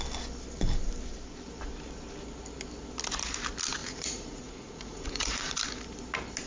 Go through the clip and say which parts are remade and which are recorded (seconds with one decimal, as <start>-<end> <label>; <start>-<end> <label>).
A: 0.0-3.8 recorded; 3.8-5.6 remade; 5.6-6.5 recorded